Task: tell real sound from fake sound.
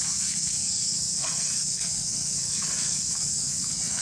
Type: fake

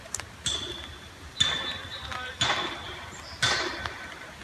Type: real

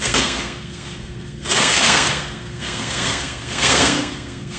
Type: fake